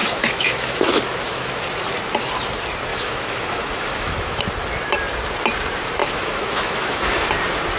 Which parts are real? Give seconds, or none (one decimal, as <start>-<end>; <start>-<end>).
1.6-2.9; 4.4-6.0; 7.3-7.8